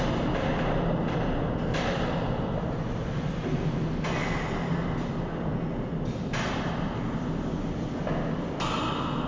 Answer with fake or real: real